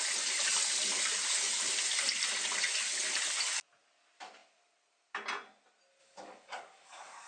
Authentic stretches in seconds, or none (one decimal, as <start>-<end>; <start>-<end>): 0.0-6.0